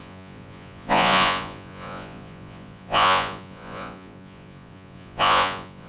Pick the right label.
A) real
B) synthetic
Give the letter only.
B